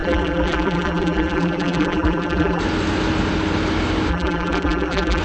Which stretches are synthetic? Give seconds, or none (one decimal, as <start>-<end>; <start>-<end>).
0.0-2.6; 4.1-5.2